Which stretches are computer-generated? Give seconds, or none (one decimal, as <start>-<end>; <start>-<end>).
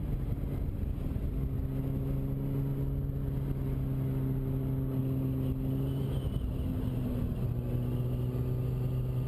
0.0-1.3